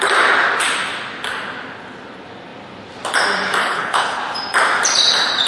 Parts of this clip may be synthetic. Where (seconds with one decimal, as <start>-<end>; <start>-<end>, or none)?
3.6-4.2